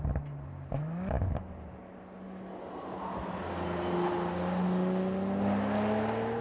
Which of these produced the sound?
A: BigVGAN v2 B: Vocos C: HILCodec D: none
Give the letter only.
D